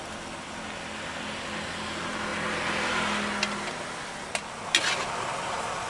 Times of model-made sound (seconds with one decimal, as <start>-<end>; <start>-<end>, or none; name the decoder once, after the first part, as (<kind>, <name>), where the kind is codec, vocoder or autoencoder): none